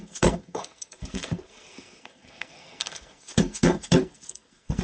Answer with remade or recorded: remade